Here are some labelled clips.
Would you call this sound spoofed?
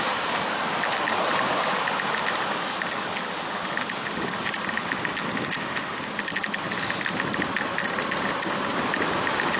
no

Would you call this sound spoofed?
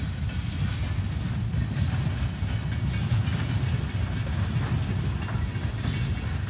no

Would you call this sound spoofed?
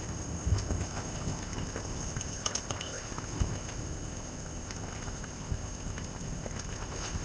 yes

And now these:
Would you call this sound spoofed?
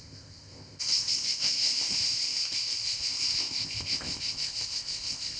yes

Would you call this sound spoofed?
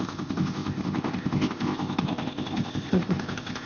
yes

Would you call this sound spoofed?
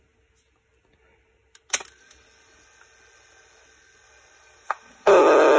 no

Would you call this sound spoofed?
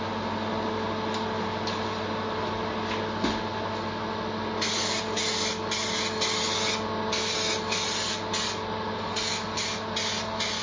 no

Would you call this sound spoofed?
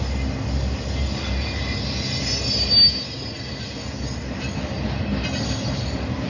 no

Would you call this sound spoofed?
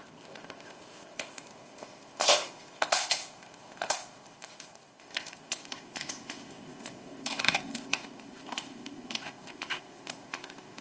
yes